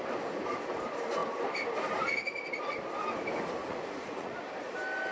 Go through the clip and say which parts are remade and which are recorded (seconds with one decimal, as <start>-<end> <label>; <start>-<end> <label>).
0.0-3.6 recorded; 3.6-4.4 remade; 4.4-5.1 recorded